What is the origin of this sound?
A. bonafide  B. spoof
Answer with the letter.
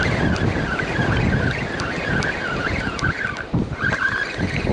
A